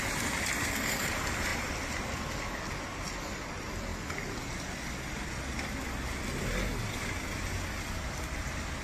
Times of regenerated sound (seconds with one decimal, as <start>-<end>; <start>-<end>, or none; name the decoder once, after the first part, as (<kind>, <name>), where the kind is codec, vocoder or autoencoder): 0.6-1.1 (codec, SNAC)